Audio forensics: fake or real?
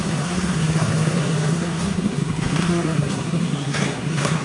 fake